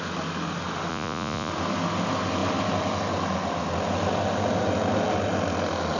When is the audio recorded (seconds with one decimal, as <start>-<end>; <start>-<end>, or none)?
0.0-0.9; 1.5-6.0